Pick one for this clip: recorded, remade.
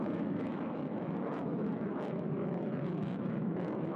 remade